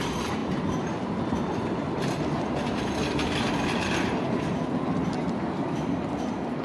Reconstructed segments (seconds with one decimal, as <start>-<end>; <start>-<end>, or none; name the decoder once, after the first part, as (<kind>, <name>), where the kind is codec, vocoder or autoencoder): none